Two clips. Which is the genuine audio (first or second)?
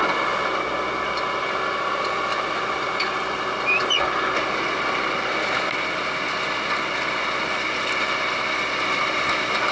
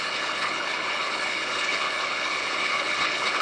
first